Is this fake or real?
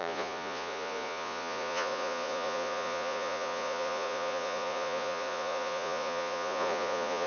fake